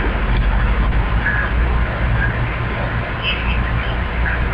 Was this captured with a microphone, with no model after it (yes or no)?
yes